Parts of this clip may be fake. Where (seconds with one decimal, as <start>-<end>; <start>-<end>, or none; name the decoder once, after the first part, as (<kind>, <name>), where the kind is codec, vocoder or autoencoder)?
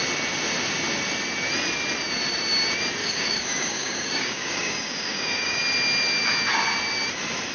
3.0-5.6 (codec, DAC)